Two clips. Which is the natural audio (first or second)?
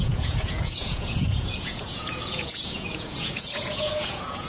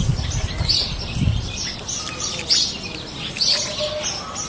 second